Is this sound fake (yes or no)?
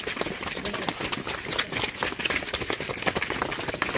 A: no